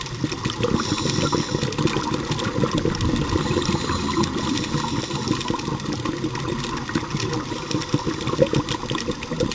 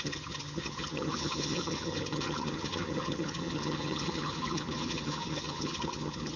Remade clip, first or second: second